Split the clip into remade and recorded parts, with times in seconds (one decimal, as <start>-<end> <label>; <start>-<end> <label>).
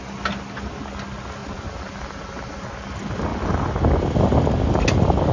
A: 0.0-1.4 recorded; 1.4-2.0 remade; 2.0-5.3 recorded